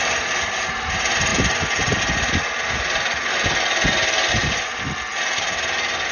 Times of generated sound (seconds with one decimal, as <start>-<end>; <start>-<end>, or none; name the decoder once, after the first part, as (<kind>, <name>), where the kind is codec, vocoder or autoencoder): none